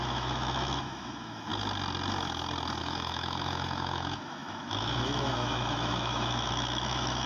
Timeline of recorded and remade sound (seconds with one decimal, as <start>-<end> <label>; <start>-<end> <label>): 0.0-1.5 remade; 1.5-2.8 recorded; 2.8-7.3 remade